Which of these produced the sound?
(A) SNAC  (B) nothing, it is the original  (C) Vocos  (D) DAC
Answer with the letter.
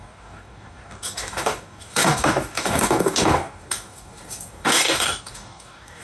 D